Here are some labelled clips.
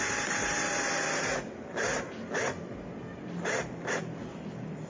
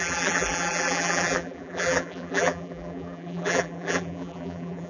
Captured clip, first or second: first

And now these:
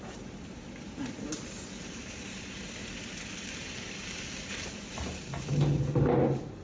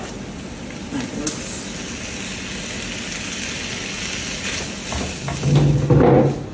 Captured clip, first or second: second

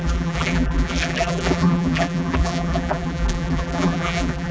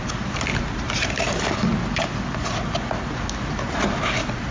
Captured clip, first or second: second